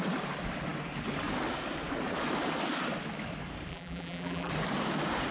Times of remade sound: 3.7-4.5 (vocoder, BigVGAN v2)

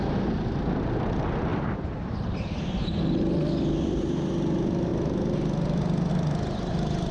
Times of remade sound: 1.5-3.0 (vocoder, BigVGAN v2)

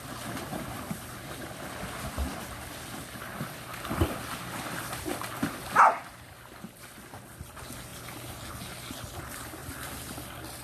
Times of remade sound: 3.7-5.8 (vocoder, BigVGAN v2); 9.6-10.6